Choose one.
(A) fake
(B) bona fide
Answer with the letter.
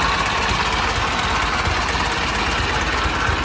B